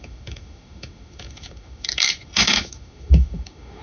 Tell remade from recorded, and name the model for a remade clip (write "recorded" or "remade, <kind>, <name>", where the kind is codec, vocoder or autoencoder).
remade, autoencoder, DAC-VAE